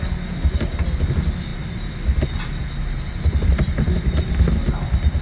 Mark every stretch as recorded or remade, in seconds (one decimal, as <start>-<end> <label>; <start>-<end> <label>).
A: 0.0-5.2 recorded